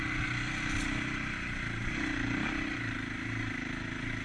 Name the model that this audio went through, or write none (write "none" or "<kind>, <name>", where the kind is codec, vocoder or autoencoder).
none